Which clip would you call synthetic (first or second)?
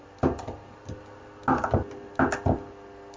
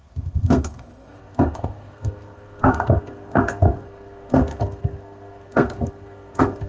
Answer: second